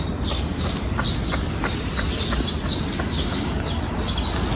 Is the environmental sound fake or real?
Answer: real